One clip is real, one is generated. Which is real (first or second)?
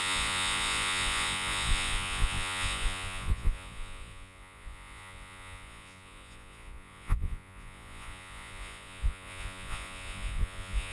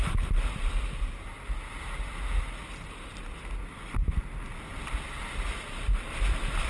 second